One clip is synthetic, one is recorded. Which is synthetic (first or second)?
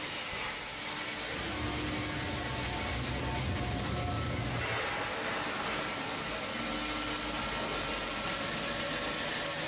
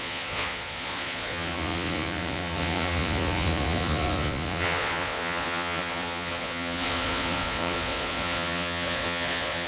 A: second